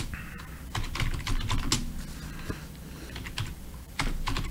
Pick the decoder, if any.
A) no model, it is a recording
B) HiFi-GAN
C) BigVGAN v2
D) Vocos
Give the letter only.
A